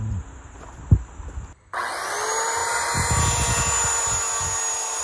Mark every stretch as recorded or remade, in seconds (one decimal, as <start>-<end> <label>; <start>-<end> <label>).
0.0-5.0 recorded